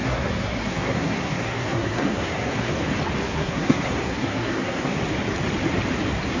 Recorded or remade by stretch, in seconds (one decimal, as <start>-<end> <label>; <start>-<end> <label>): 0.0-2.7 remade; 2.7-3.2 recorded; 3.2-5.0 remade; 5.0-6.4 recorded